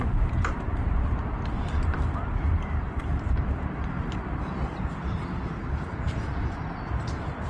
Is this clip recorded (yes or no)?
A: no